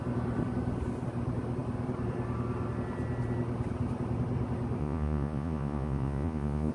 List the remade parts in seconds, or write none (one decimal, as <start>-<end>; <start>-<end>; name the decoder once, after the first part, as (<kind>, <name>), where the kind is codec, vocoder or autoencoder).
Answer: 4.8-6.7 (vocoder, Vocos)